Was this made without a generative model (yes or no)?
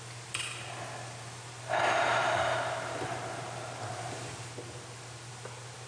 yes